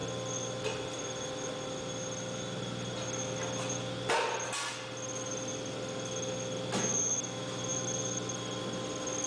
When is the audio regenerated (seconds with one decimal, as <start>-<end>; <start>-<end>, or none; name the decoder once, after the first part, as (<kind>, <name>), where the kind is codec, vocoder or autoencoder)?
none